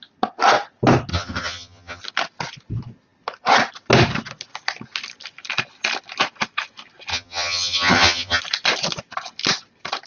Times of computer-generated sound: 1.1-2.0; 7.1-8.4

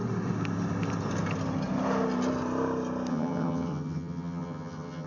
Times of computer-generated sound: 3.1-5.1